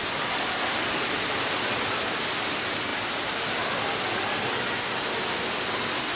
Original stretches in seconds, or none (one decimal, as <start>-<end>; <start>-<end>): 0.0-6.2